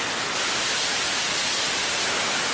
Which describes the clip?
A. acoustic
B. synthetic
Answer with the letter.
A